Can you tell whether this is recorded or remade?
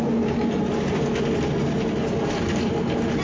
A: recorded